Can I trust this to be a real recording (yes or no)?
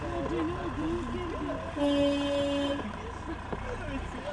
yes